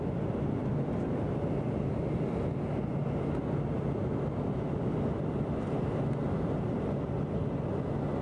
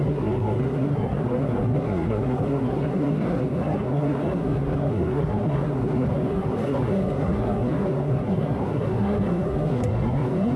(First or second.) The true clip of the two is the first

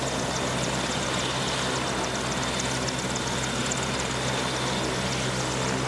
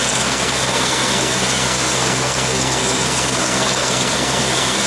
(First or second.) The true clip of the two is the first